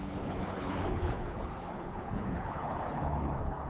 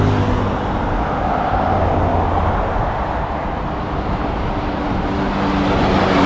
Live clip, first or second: second